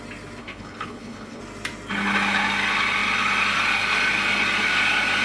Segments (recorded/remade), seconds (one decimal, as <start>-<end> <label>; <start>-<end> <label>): 0.0-0.4 recorded; 0.4-1.4 remade; 1.4-5.2 recorded